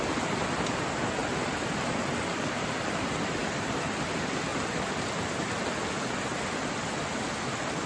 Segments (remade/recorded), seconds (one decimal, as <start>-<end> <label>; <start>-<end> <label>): 0.0-1.2 recorded; 1.2-2.8 remade; 2.8-3.4 recorded; 3.4-3.9 remade; 3.9-4.5 recorded; 4.5-5.1 remade; 5.1-7.9 recorded